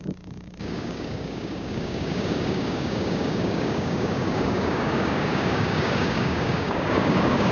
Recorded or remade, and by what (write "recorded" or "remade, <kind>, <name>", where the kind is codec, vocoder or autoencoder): remade, codec, DAC